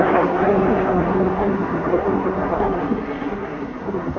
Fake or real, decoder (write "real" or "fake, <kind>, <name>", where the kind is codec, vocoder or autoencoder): fake, codec, SNAC